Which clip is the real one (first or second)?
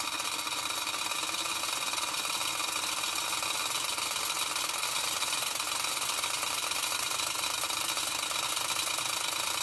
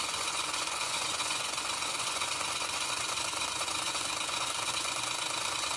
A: first